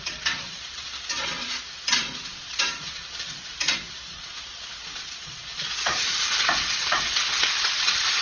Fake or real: fake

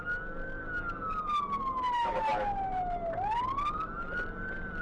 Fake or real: real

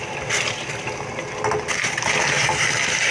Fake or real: real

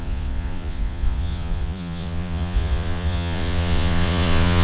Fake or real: fake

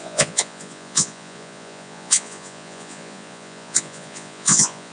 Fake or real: fake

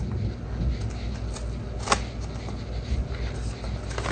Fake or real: real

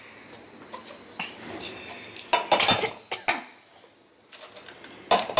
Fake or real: real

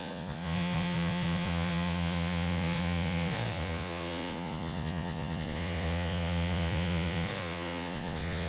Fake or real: fake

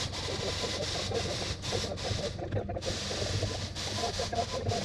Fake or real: real